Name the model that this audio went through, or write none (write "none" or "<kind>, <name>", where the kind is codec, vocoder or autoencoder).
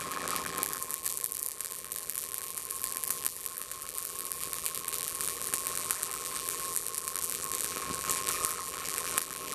vocoder, BigVGAN v2